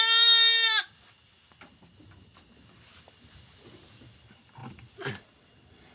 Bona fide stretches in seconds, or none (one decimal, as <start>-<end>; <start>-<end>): 0.0-5.9